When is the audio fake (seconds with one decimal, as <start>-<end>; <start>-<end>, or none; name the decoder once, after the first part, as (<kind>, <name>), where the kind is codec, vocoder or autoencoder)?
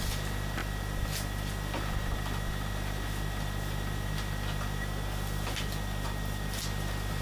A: none